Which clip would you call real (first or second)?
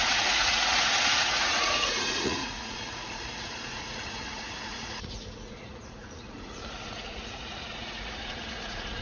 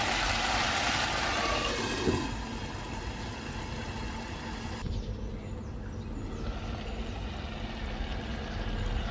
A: second